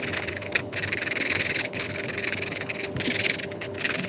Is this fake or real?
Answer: fake